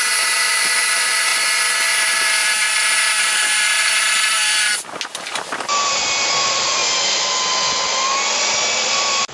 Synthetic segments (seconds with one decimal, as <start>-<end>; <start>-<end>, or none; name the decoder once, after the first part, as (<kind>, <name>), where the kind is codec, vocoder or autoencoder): 0.0-1.3 (vocoder, BigVGAN v2); 3.1-4.7; 5.9-6.8; 8.8-9.3